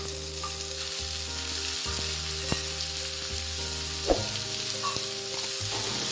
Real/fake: real